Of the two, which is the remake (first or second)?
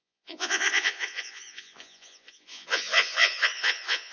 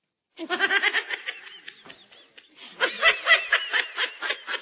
first